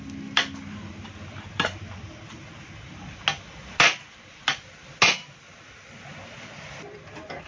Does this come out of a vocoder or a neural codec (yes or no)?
no